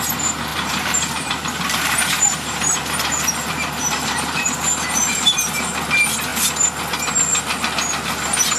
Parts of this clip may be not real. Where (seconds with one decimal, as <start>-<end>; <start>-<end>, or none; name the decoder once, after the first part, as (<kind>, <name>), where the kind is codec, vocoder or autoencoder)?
0.5-5.3 (vocoder, BigVGAN v2)